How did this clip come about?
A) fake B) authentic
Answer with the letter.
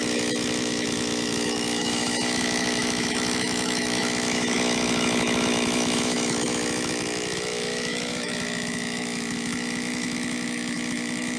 A